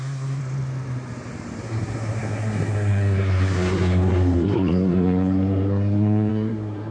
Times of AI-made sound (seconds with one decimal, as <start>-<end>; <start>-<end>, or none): 0.0-0.4; 1.6-6.9